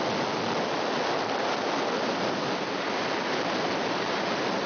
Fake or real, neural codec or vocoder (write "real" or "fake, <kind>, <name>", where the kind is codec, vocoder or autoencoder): real